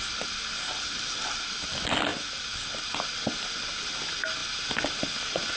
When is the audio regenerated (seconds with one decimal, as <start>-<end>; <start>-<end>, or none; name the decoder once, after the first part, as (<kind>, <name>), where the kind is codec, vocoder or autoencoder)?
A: none